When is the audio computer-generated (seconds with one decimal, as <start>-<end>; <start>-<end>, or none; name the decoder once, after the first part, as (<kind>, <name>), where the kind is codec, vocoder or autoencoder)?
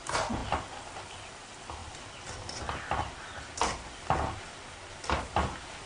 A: none